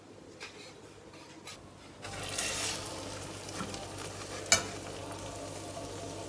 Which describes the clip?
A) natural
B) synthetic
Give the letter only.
A